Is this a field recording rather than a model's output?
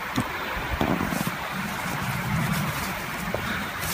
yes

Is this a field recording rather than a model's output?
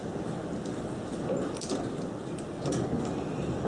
yes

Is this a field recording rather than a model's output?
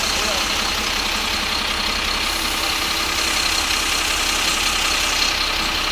yes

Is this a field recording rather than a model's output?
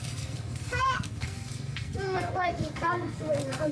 no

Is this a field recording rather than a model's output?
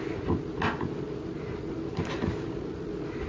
yes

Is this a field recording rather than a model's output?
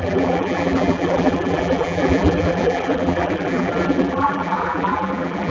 no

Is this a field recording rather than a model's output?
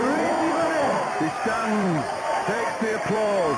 no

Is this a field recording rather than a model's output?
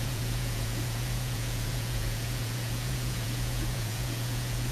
no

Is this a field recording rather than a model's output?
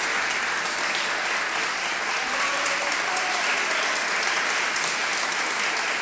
yes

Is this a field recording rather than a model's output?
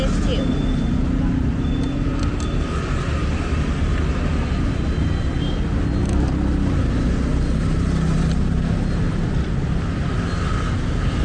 yes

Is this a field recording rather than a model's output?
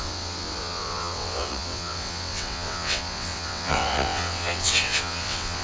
no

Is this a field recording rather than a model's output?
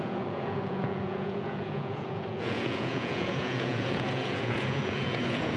no